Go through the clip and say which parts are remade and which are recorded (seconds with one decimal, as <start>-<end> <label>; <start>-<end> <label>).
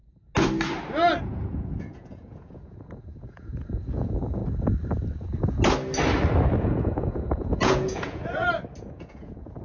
0.0-1.2 recorded; 1.2-4.4 remade; 4.4-6.6 recorded; 6.6-8.2 remade; 8.2-8.8 recorded; 8.8-9.6 remade